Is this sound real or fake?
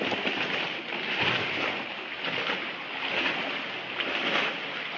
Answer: real